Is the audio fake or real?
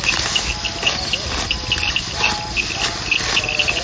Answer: real